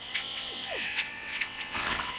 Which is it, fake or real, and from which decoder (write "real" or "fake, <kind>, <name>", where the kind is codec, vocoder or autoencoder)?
fake, vocoder, WaveNeXt